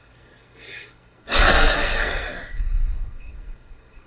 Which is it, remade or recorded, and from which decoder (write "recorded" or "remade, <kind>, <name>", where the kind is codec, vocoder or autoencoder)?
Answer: remade, codec, SNAC